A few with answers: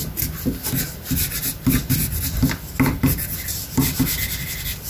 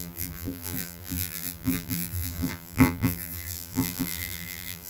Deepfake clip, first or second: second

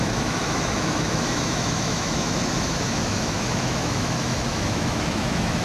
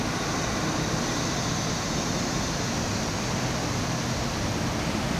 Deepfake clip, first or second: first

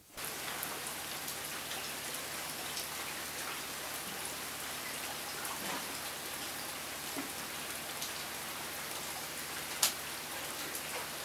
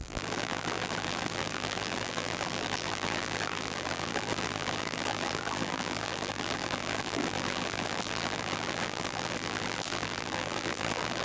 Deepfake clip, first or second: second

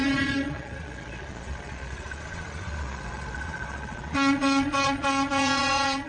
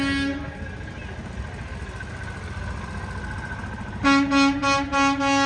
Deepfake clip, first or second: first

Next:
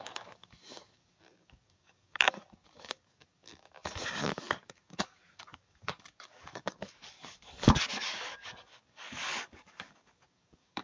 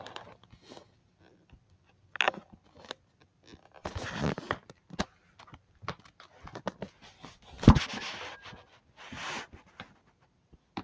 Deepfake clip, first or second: first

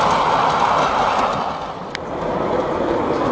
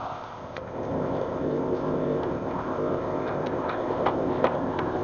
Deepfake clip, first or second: second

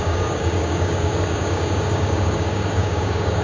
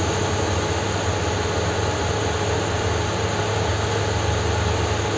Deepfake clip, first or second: first